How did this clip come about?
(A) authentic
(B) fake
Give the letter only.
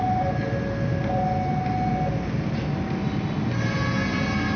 A